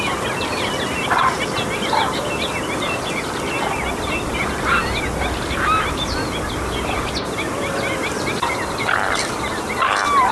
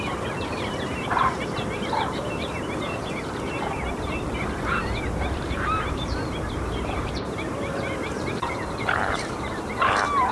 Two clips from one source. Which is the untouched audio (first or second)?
first